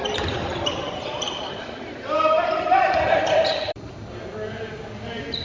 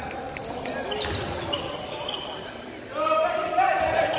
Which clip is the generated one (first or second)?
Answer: first